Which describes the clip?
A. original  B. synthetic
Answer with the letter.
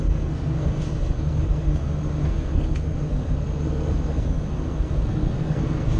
B